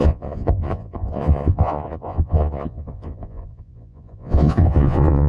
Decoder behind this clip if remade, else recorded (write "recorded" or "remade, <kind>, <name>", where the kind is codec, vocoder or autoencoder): remade, vocoder, Vocos